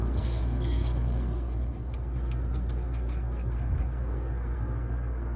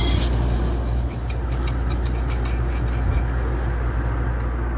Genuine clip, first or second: second